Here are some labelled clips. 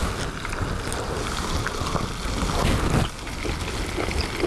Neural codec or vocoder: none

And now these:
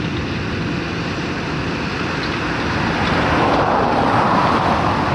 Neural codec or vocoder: none